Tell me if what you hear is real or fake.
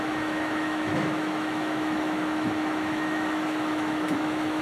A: fake